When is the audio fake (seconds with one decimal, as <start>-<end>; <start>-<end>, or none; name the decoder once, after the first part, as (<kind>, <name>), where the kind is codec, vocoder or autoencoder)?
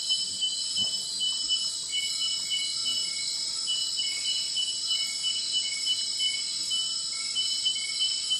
none